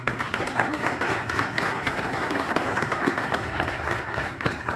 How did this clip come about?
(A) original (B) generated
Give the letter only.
B